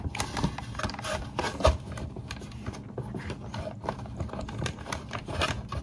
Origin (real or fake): real